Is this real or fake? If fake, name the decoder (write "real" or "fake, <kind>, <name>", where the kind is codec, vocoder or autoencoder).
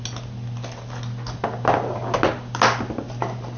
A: real